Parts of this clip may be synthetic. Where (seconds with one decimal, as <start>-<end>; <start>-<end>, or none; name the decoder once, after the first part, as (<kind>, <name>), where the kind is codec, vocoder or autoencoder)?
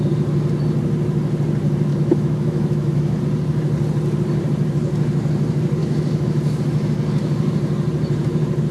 1.9-3.2 (autoencoder, DAC-VAE); 5.8-6.6